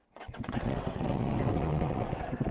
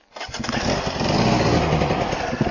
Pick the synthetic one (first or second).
first